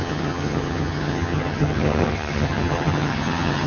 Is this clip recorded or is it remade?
remade